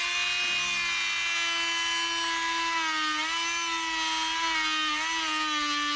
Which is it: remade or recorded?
recorded